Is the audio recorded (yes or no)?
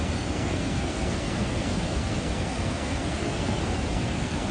no